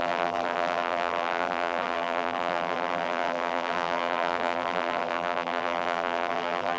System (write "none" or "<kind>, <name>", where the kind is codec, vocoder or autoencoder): vocoder, BigVGAN v2